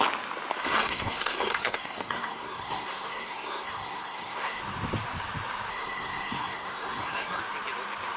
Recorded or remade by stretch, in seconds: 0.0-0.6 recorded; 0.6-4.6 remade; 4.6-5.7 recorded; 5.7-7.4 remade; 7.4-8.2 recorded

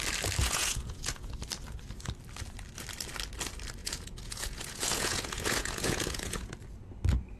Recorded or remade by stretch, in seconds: 0.0-0.4 recorded; 0.4-1.3 remade; 1.3-3.8 recorded; 3.8-6.5 remade; 6.5-7.4 recorded

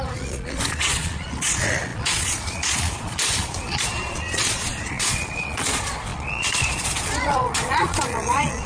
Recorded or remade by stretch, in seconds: 0.0-8.7 remade

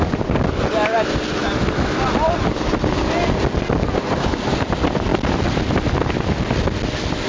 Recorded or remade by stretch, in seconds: 0.0-7.3 recorded

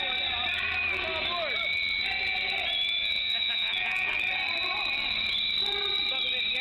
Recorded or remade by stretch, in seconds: 0.0-3.0 recorded; 3.0-4.1 remade; 4.1-6.6 recorded